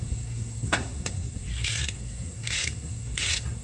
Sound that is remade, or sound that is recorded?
remade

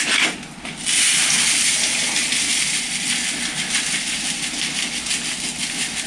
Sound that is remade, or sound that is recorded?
recorded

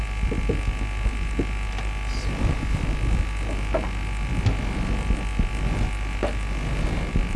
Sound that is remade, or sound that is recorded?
recorded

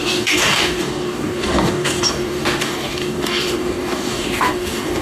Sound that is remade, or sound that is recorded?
remade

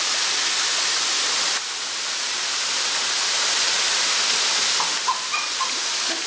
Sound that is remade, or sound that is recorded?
recorded